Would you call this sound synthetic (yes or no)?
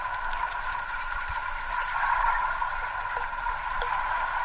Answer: yes